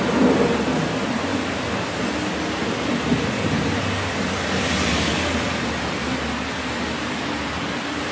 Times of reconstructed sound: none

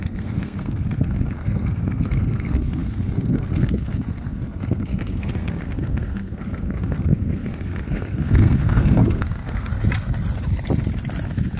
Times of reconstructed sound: 0.0-9.7 (codec, SNAC)

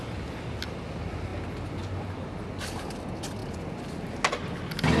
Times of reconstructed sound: none

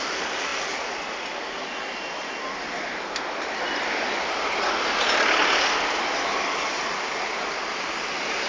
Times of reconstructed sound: none

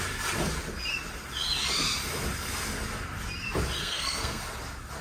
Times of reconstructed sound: 3.8-4.4 (codec, SNAC)

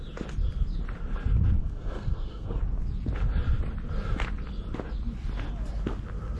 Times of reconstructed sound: 1.6-2.6 (codec, SNAC)